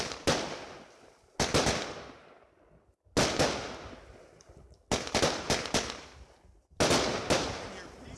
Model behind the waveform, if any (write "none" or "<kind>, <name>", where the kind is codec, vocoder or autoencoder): none